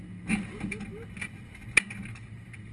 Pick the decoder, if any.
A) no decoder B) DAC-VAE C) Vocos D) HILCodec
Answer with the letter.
A